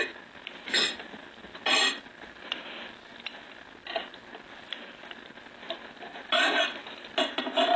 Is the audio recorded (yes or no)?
yes